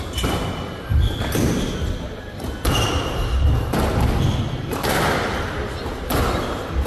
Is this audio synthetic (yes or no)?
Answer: no